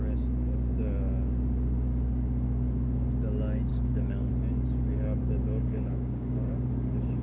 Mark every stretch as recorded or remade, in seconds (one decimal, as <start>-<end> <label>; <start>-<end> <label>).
0.0-3.7 recorded; 3.7-4.3 remade; 4.3-5.2 recorded; 5.2-6.5 remade; 6.5-7.2 recorded